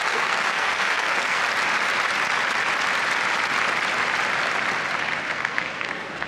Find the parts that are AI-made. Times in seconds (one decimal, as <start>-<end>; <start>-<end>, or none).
0.0-1.4; 5.2-6.3